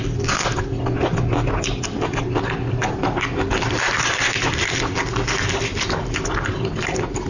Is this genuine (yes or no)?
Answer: yes